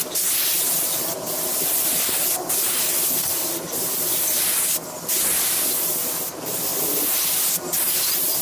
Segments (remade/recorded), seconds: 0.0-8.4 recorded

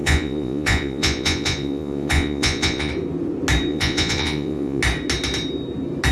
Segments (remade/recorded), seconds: 0.0-2.9 remade; 2.9-3.7 recorded; 3.7-4.8 remade; 4.8-6.1 recorded